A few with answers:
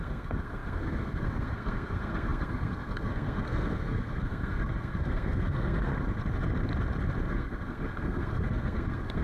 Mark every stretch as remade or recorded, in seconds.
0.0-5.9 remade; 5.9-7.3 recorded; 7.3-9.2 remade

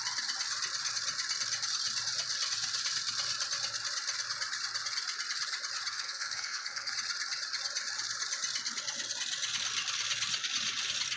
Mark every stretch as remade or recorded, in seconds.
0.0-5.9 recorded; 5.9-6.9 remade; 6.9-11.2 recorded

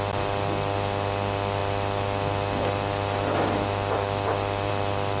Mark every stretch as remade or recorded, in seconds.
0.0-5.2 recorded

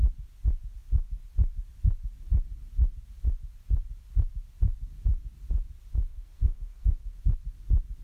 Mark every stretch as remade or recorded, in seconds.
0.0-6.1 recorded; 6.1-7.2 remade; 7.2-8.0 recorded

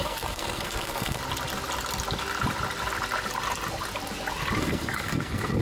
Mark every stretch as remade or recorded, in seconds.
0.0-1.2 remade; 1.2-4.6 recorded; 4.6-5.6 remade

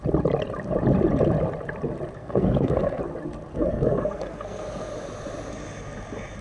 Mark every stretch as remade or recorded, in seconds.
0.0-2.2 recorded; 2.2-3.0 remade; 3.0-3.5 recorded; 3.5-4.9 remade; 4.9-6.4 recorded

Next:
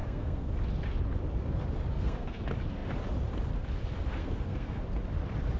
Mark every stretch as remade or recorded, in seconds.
0.0-0.5 remade; 0.5-1.9 recorded; 1.9-2.4 remade; 2.4-4.2 recorded; 4.2-4.8 remade; 4.8-5.6 recorded

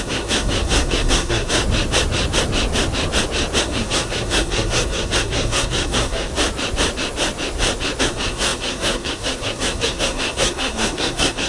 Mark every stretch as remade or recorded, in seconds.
0.0-1.6 remade; 1.6-3.6 recorded; 3.6-6.3 remade; 6.3-8.0 recorded; 8.0-11.5 remade